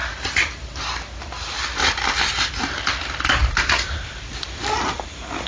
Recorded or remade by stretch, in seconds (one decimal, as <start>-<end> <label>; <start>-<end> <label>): 0.0-5.5 recorded